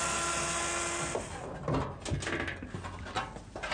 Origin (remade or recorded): recorded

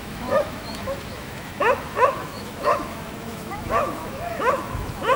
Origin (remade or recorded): remade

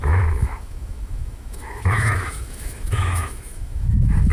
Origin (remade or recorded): remade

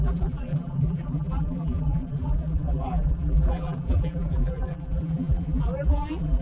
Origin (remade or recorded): remade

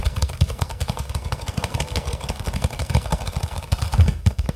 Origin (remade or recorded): remade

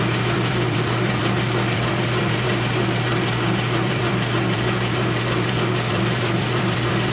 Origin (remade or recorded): remade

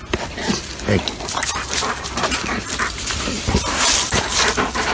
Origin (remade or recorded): recorded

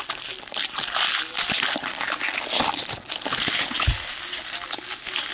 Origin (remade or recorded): recorded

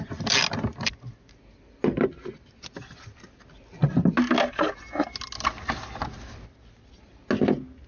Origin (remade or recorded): recorded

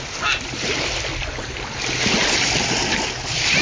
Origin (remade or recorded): recorded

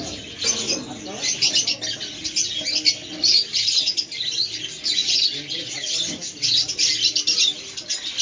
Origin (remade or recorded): recorded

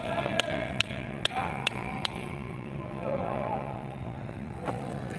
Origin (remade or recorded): remade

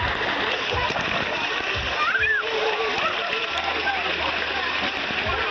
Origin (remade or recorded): recorded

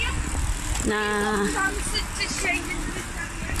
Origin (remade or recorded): recorded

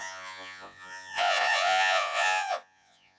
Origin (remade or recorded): remade